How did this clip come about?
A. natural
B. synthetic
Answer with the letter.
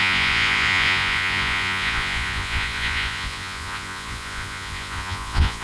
B